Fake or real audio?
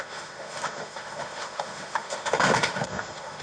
fake